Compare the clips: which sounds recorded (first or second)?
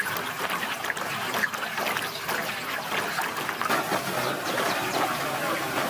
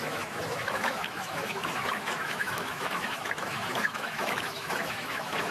first